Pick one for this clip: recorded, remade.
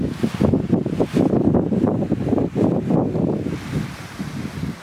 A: recorded